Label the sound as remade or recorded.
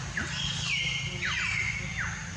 recorded